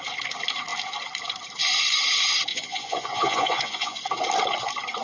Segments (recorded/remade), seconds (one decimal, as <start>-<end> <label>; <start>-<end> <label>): 0.0-2.5 recorded; 2.5-4.0 remade; 4.0-5.0 recorded

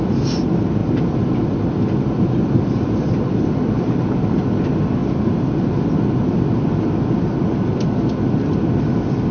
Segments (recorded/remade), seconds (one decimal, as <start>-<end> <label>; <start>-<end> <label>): 0.0-9.3 recorded

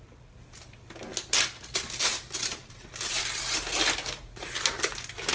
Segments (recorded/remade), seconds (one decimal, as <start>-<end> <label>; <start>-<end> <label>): 0.0-5.3 recorded